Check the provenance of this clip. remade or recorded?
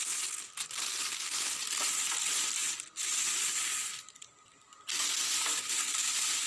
recorded